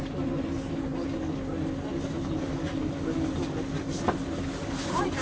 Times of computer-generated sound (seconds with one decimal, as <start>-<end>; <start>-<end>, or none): none